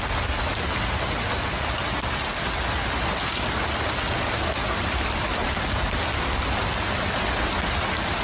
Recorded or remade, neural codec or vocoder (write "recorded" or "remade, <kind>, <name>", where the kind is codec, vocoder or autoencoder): recorded